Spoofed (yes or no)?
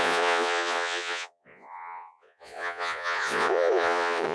yes